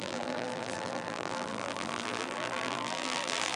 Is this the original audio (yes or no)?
no